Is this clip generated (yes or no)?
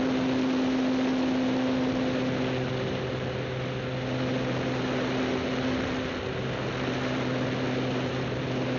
no